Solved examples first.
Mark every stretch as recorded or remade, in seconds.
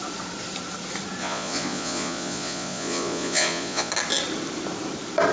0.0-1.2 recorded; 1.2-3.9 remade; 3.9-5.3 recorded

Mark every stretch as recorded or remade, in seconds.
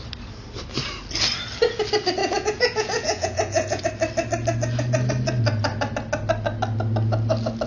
0.0-2.2 recorded; 2.2-3.8 remade; 3.8-7.7 recorded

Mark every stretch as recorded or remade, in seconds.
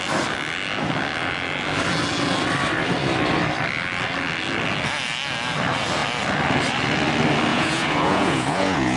0.0-7.5 recorded; 7.5-9.0 remade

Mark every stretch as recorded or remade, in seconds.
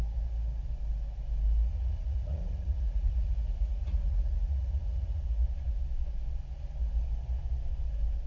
0.0-1.7 recorded; 1.7-5.2 remade; 5.2-8.3 recorded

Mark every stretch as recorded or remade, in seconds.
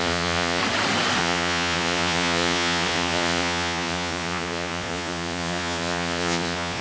0.0-0.6 remade; 0.6-1.2 recorded; 1.2-6.8 remade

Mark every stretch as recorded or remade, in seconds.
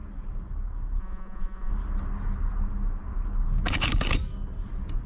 0.0-1.0 recorded; 1.0-1.7 remade; 1.7-5.1 recorded